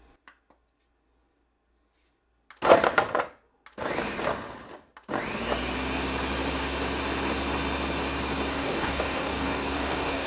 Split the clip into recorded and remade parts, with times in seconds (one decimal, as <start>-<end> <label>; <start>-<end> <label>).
0.0-8.5 recorded; 8.5-10.3 remade